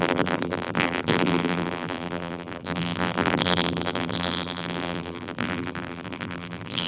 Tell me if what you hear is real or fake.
fake